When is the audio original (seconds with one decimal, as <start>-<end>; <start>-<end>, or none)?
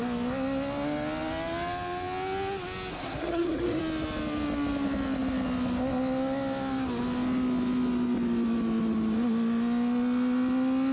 0.0-2.9; 3.8-10.9